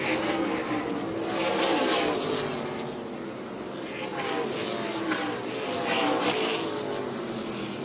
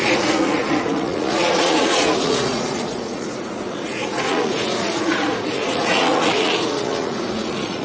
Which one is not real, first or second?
second